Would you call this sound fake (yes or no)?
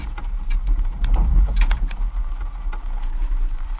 yes